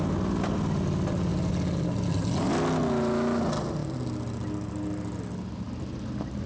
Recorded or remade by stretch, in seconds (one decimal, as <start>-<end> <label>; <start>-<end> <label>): 0.0-6.5 recorded